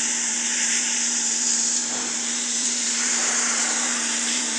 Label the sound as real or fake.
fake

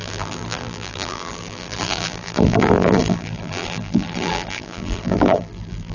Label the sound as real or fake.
fake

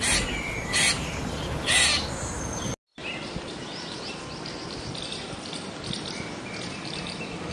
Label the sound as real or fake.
real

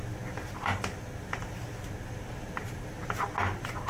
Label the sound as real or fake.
real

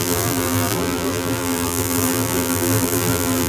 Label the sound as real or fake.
fake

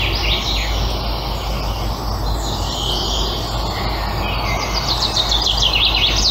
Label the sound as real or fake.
real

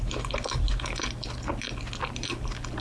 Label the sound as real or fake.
real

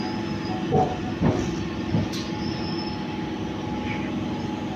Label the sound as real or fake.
real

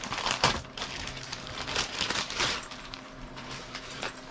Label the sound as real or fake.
fake